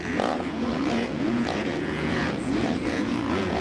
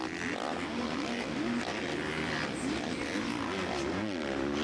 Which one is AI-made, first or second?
first